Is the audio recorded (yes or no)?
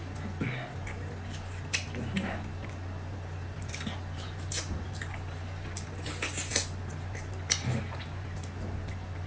yes